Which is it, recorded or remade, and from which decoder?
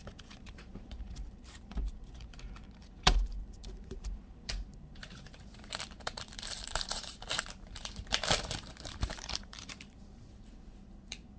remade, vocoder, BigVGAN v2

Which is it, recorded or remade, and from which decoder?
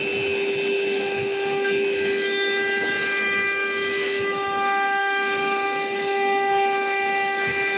remade, autoencoder, DAC-VAE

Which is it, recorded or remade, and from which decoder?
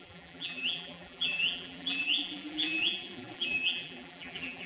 remade, vocoder, BigVGAN v2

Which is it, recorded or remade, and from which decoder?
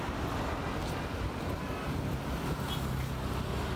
recorded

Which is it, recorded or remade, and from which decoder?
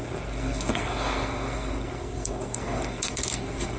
remade, codec, SNAC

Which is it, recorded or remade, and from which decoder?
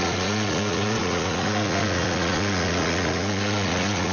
remade, vocoder, Vocos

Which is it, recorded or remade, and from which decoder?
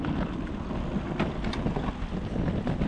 recorded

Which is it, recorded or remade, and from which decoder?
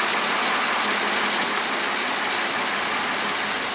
recorded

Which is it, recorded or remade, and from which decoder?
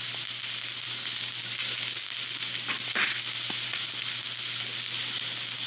recorded